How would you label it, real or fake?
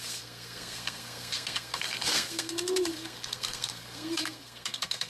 fake